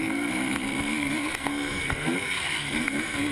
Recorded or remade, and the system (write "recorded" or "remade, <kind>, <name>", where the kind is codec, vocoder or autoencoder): remade, codec, SNAC